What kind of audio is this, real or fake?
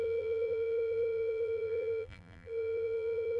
fake